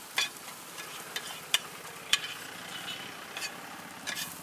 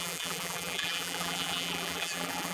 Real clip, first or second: first